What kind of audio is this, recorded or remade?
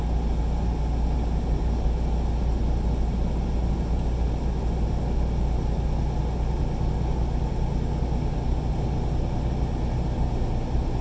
recorded